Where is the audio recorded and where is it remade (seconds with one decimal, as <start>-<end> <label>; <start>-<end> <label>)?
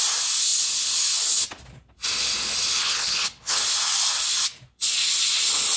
0.0-2.8 recorded; 2.8-3.6 remade; 3.6-5.8 recorded